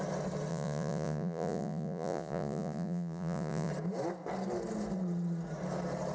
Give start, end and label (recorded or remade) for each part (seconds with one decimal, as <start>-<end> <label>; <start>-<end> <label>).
0.0-0.5 recorded; 0.5-3.7 remade; 3.7-6.1 recorded